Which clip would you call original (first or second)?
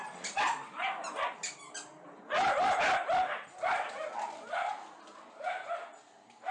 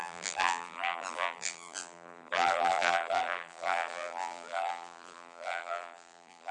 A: first